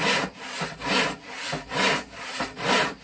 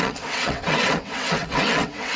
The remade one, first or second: second